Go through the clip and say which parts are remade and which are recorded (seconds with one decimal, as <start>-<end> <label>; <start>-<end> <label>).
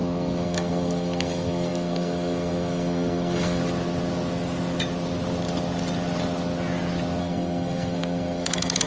0.0-3.6 remade; 3.6-7.2 recorded; 7.2-8.9 remade